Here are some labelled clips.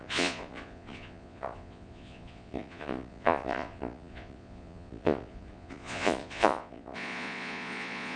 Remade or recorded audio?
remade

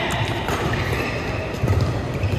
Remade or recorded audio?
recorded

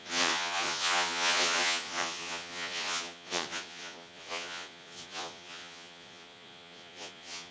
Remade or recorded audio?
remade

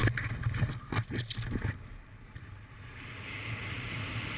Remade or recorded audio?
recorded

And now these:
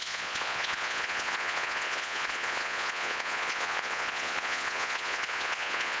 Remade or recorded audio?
remade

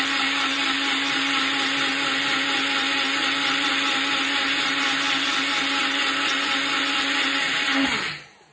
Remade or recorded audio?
recorded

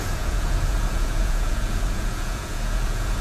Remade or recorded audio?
remade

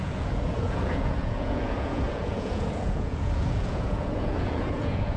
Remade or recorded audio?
remade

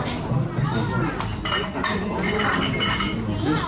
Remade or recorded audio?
recorded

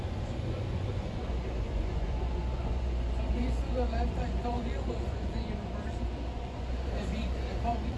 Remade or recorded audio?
remade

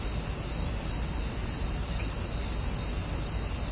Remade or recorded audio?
recorded